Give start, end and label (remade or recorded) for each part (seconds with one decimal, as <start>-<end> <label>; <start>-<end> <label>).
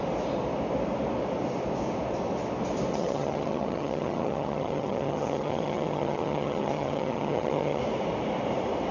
0.0-2.9 recorded; 2.9-7.8 remade; 7.8-8.9 recorded